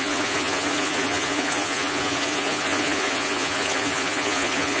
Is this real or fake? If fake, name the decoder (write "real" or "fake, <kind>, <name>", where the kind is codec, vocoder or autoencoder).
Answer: fake, vocoder, Vocos